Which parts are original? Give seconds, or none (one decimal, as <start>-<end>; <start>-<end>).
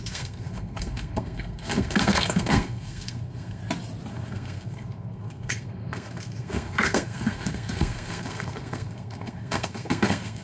3.6-4.1